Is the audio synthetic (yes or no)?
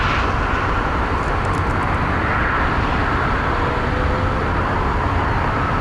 no